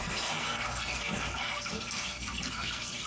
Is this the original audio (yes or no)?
no